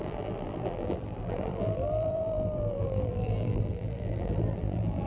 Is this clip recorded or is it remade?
remade